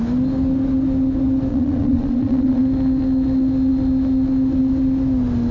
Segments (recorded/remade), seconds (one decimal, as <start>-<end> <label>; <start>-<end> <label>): 0.0-1.5 recorded; 1.5-2.6 remade; 2.6-5.5 recorded